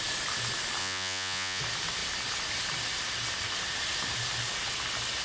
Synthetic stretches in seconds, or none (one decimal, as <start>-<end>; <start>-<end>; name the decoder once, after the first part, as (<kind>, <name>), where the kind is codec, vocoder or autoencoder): 0.8-1.6 (vocoder, Vocos)